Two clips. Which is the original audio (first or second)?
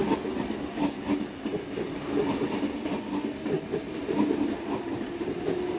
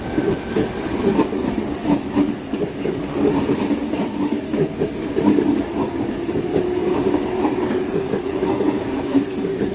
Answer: first